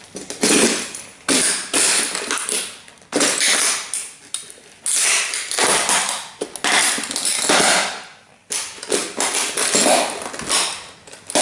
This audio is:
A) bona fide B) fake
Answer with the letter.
A